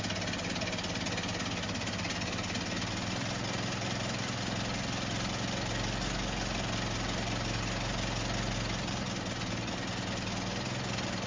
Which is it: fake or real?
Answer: real